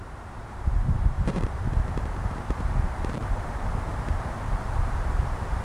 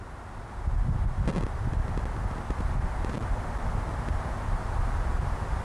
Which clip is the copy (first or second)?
first